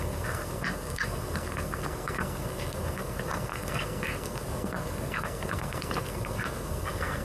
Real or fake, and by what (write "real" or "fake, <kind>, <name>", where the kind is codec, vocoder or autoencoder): fake, codec, SNAC